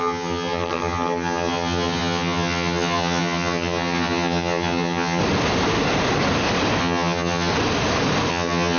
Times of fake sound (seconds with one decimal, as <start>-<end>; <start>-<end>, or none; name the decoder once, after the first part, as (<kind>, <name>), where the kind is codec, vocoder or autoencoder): 0.0-5.2 (vocoder, HiFi-GAN); 6.8-7.5; 8.3-8.8